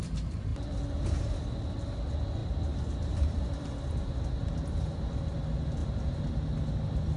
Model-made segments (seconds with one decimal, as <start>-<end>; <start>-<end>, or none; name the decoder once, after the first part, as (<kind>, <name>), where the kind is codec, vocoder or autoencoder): 5.8-6.3 (vocoder, BigVGAN v2)